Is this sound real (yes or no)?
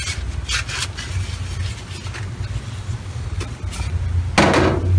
yes